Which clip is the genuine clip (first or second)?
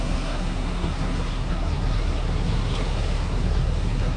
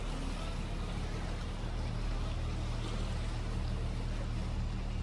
second